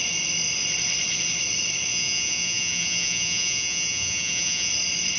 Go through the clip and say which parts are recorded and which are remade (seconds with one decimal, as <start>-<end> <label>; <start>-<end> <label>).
0.0-1.9 recorded; 1.9-4.7 remade; 4.7-5.2 recorded